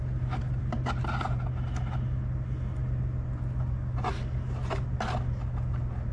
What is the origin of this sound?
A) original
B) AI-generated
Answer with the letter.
A